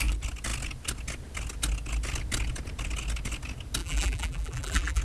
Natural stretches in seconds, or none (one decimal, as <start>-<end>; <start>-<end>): 0.0-3.8